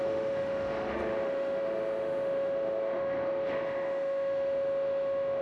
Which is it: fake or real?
fake